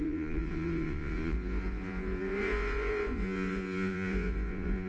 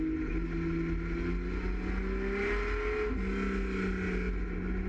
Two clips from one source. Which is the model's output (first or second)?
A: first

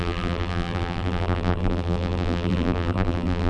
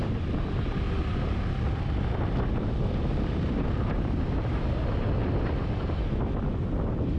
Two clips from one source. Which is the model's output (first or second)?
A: first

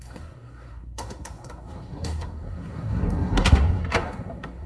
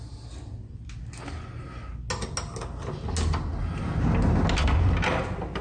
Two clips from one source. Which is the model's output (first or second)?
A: first